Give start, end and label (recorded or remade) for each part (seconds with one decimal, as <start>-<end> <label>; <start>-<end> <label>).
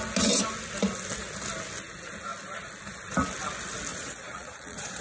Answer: 0.0-3.9 recorded; 3.9-5.0 remade